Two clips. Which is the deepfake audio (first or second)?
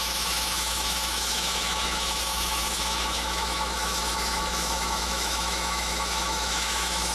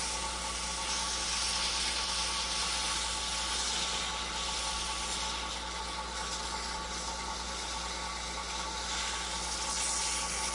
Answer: first